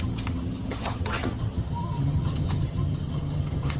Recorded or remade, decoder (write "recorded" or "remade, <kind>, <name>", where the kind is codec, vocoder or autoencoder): remade, vocoder, HiFi-GAN